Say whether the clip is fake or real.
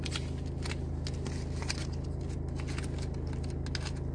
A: real